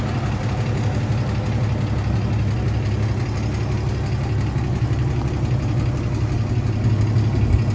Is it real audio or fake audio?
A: real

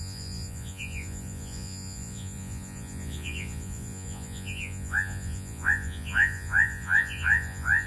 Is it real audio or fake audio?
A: fake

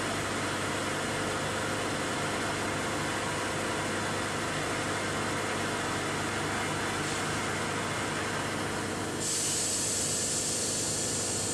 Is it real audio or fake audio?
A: real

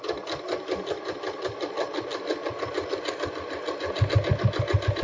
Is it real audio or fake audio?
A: real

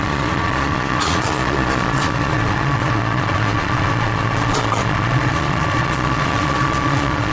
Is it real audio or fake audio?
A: fake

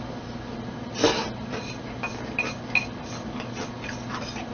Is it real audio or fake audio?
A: real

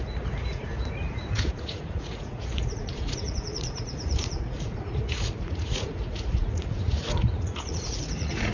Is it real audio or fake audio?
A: fake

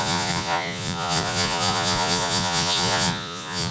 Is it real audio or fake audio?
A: fake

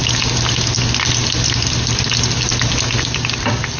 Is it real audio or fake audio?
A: real